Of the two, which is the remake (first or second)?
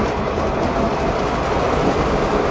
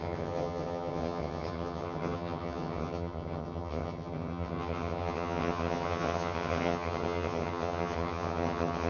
second